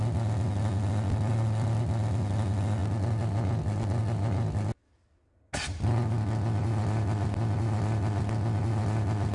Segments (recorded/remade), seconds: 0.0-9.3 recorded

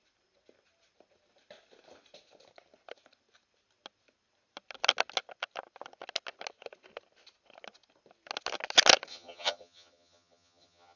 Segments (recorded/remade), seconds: 0.0-9.1 recorded; 9.1-11.0 remade